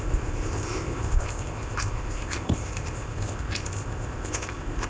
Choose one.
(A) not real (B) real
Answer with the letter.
A